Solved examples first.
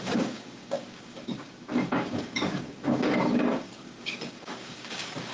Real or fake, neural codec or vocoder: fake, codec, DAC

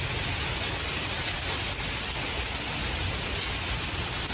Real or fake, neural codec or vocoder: real